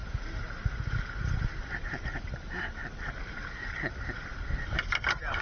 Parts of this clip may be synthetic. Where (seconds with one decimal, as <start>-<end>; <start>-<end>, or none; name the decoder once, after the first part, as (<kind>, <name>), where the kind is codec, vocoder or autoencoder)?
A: none